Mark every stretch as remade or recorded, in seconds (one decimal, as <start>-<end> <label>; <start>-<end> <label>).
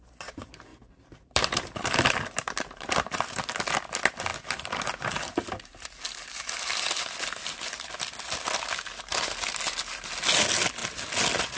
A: 0.0-0.7 recorded; 0.7-3.6 remade; 3.6-11.6 recorded